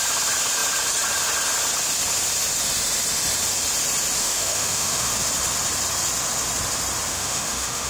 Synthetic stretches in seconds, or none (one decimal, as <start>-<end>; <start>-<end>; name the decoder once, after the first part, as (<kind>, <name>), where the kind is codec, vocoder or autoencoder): 4.2-5.1 (autoencoder, DAC-VAE); 7.1-7.9